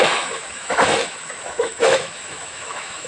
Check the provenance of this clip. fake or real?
fake